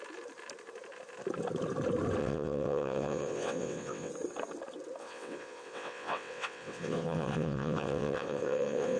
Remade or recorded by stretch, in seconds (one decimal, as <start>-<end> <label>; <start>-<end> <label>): 0.0-2.2 recorded; 2.2-4.1 remade; 4.1-5.0 recorded; 5.0-9.0 remade